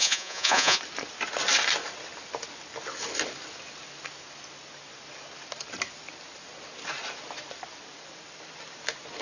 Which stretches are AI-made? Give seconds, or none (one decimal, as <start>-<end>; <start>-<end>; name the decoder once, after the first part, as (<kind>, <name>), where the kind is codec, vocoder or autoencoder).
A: 0.0-0.8 (vocoder, Vocos)